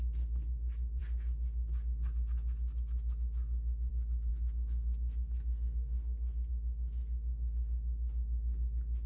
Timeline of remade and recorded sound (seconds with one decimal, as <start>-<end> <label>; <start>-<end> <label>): 0.0-4.3 recorded; 4.3-6.5 remade; 6.5-9.1 recorded